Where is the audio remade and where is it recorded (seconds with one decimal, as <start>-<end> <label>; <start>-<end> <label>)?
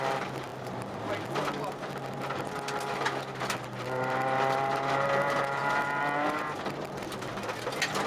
0.0-8.1 recorded